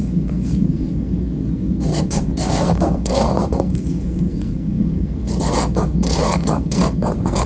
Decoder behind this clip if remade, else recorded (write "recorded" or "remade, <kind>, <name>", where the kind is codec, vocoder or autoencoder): remade, codec, SNAC